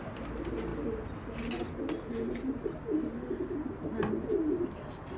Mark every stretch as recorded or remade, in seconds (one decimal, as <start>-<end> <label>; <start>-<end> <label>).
0.0-5.2 recorded